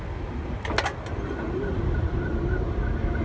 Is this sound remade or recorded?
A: recorded